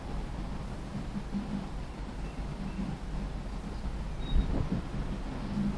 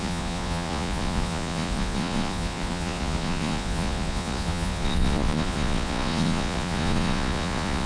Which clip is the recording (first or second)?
first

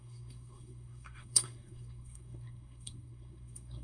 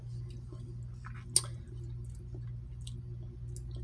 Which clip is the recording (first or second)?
second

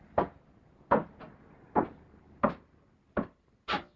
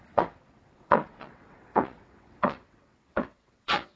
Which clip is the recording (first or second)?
first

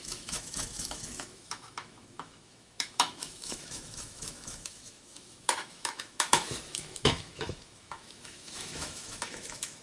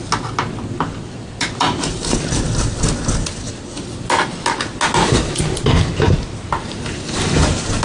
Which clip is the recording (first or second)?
second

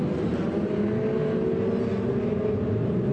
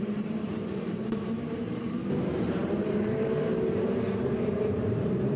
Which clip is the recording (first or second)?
first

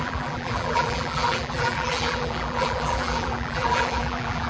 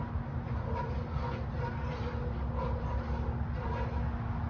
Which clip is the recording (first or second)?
second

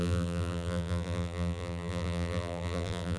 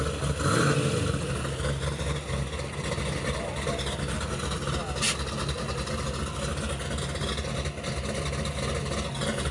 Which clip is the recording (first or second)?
second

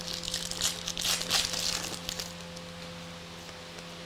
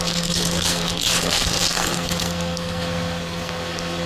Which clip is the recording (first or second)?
first